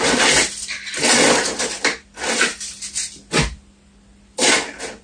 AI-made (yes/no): no